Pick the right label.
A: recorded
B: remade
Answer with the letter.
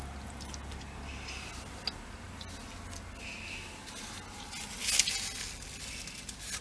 A